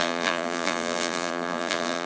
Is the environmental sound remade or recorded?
remade